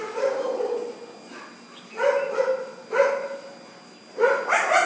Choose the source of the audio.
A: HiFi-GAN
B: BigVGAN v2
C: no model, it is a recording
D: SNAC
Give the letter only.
C